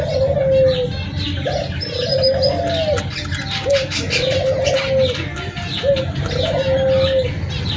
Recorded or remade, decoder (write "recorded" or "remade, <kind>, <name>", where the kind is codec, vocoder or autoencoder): recorded